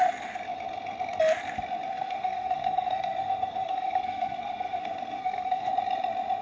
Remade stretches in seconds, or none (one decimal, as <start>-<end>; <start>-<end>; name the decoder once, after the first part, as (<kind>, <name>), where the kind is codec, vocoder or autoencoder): 1.9-5.7 (codec, SNAC)